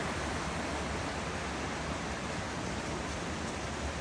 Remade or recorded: recorded